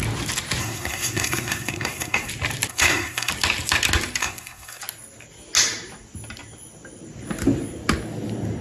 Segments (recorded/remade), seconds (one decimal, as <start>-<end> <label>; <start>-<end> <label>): 0.0-0.6 recorded; 0.6-2.3 remade; 2.3-2.7 recorded; 2.7-3.3 remade; 3.3-4.2 recorded; 4.2-4.8 remade; 4.8-8.6 recorded